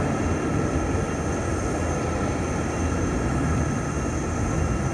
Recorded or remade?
recorded